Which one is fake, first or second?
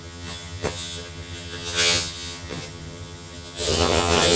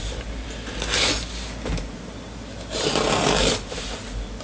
first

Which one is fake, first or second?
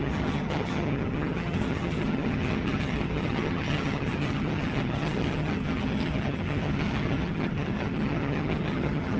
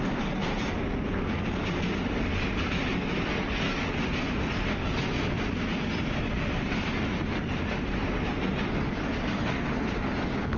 first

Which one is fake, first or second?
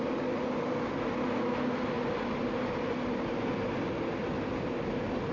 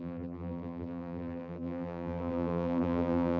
second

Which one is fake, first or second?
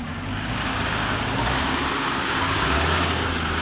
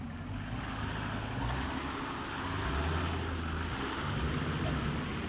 first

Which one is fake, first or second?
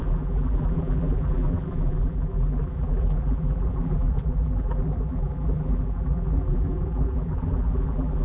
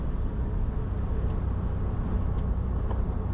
first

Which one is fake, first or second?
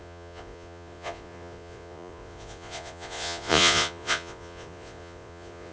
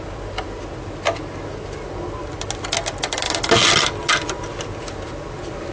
first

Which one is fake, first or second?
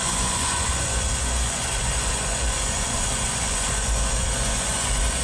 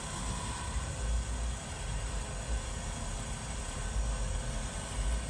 first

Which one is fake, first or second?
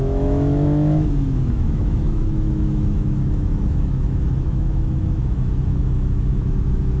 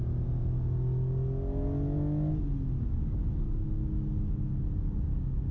first